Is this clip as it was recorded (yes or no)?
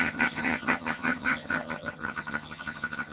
no